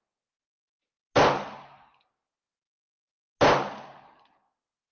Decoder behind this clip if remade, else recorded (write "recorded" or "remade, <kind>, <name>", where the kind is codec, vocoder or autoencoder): recorded